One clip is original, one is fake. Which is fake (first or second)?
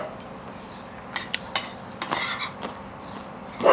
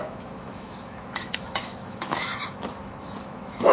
second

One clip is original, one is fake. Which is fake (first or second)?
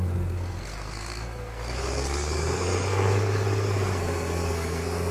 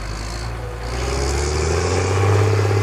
first